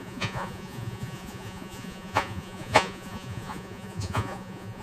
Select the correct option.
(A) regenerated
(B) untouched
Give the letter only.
A